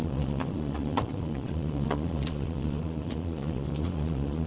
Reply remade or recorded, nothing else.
remade